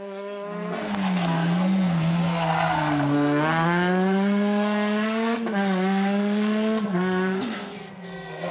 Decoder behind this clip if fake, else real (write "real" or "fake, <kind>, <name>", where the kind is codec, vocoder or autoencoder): fake, codec, SNAC